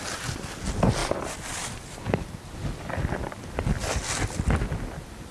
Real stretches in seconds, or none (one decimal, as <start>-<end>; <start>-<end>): 0.0-5.3